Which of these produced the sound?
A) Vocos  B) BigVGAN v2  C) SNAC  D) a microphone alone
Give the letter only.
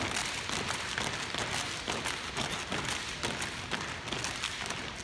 D